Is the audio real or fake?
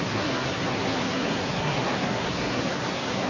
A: fake